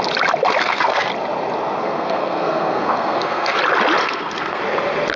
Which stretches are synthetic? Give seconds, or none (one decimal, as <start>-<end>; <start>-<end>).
0.6-1.1; 1.8-3.6; 4.0-4.6